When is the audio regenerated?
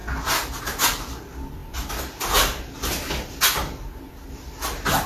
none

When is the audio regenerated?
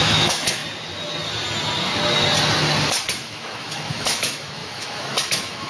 0.0-0.6 (autoencoder, DAC-VAE); 3.1-5.7